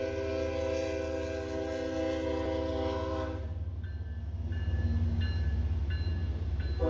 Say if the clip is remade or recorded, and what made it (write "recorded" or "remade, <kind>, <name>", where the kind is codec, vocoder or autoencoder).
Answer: recorded